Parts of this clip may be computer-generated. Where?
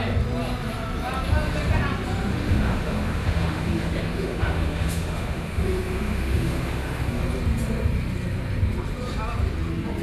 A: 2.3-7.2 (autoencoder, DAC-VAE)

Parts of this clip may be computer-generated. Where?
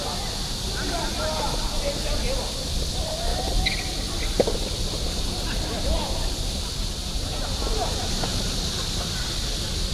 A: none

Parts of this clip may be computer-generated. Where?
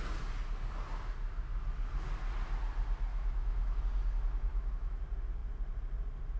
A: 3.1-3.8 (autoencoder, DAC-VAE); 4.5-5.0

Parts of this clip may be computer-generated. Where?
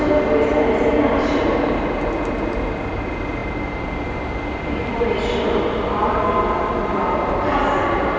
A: none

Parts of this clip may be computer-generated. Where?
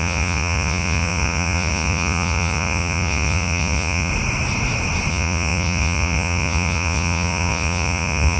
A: 0.0-4.1 (vocoder, Vocos); 5.1-8.4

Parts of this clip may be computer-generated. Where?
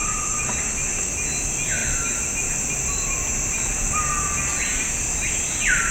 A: none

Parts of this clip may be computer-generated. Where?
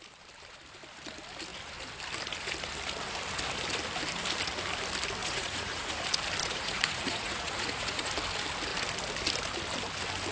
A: 5.2-5.9 (vocoder, Vocos); 6.4-8.1